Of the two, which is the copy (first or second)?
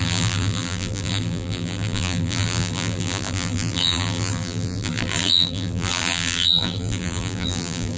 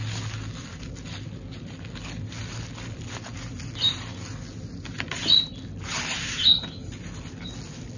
first